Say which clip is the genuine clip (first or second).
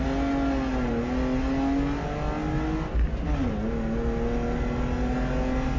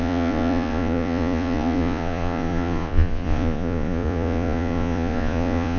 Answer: first